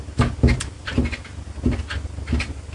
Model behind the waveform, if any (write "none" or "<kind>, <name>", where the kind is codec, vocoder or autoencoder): none